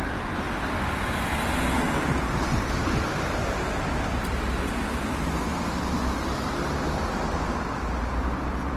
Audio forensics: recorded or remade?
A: recorded